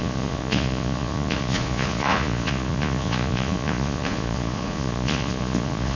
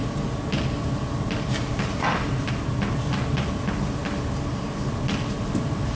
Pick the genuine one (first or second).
second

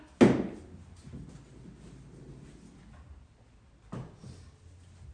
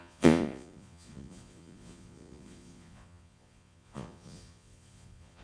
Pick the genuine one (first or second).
first